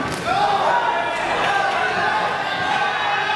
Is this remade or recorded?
recorded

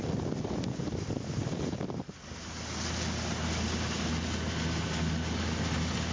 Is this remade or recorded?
recorded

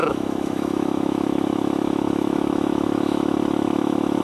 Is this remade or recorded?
remade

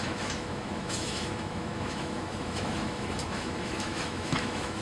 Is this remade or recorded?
remade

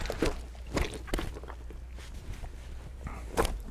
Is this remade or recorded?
recorded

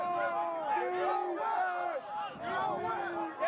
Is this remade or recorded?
recorded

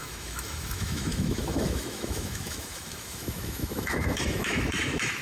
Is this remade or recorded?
remade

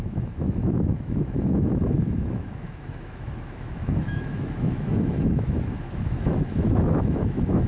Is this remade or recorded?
remade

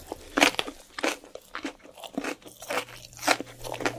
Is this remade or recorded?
recorded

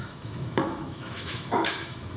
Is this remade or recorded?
remade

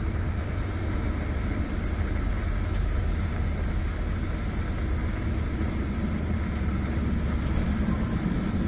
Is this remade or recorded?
recorded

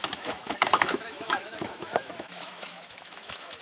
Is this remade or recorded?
remade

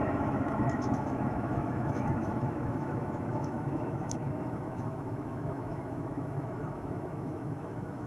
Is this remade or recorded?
remade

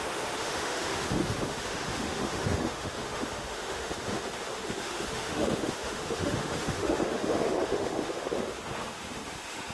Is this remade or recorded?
remade